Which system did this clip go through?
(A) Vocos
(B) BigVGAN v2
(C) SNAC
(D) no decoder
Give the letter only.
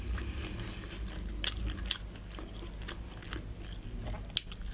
D